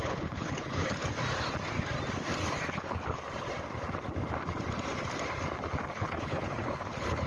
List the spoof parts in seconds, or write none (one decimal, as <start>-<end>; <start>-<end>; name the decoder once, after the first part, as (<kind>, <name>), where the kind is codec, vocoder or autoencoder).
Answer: 0.0-1.0 (codec, HILCodec); 2.7-3.2; 5.8-7.3